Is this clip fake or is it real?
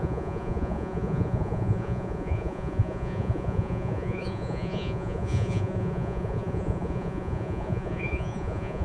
fake